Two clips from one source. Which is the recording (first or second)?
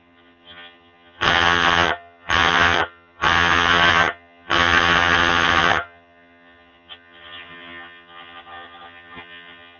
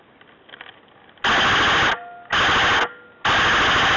second